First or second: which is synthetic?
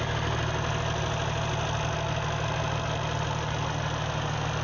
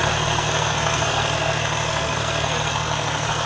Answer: second